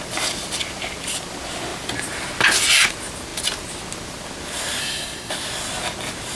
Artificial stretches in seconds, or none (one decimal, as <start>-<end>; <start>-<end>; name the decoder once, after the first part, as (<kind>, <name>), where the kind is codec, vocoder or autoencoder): 4.8-5.3 (codec, SNAC)